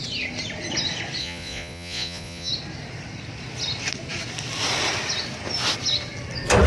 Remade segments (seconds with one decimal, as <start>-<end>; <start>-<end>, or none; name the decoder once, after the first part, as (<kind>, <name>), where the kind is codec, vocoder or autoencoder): 1.2-2.5 (vocoder, Vocos)